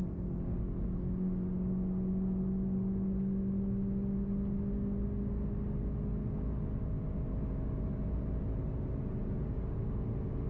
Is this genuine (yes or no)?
yes